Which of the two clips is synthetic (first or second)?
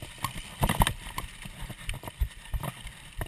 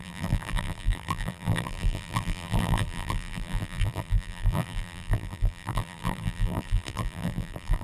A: second